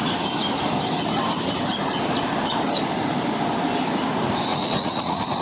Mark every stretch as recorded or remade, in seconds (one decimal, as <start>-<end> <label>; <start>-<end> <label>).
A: 0.0-4.5 recorded; 4.5-5.4 remade